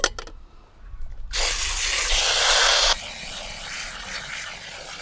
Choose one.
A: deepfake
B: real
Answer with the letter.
B